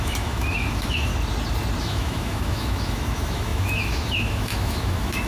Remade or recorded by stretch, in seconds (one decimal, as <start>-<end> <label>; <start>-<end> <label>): 0.0-1.1 remade; 1.1-1.8 recorded; 1.8-5.3 remade